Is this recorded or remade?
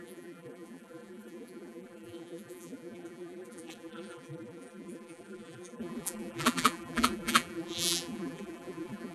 remade